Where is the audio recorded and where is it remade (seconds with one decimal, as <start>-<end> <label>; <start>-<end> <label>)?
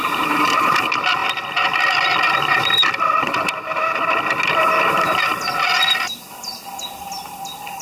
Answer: 0.0-7.8 recorded